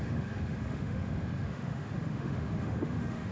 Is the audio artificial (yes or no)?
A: yes